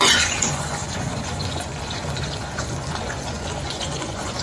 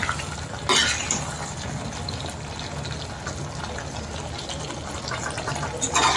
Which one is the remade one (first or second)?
first